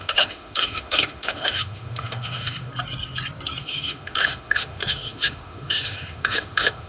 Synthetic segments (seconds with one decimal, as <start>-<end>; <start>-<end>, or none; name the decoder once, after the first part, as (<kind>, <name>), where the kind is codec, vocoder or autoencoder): 0.0-2.7 (autoencoder, DAC-VAE); 3.6-6.9